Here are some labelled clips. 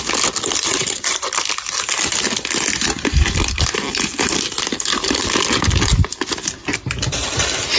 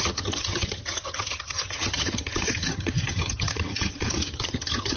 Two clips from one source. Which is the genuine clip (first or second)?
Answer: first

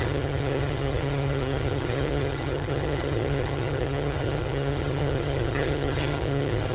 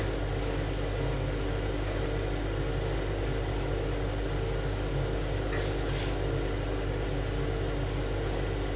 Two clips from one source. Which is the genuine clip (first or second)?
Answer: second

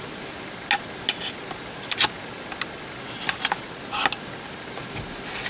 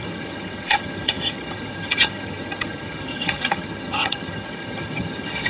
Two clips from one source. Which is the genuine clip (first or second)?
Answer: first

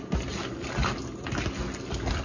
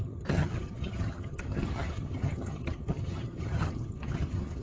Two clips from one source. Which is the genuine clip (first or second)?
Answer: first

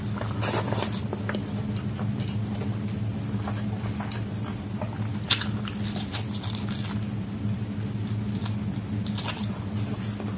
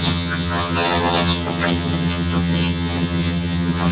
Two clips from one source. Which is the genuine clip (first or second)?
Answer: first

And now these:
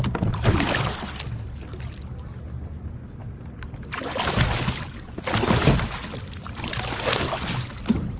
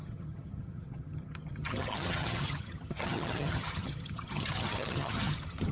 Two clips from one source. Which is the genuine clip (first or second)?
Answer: first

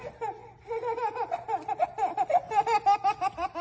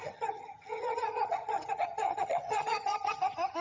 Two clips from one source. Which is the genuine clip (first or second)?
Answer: first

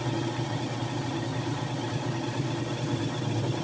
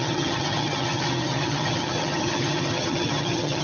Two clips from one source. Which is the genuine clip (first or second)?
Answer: first